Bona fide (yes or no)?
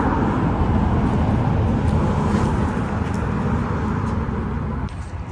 yes